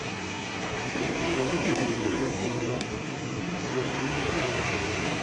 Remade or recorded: remade